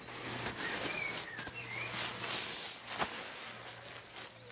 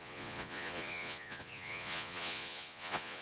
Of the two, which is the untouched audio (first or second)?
first